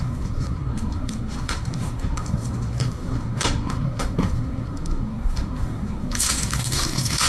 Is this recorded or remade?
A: remade